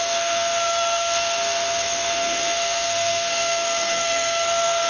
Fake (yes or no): yes